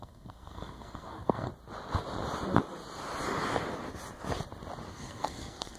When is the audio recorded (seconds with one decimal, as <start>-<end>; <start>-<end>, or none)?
1.5-4.9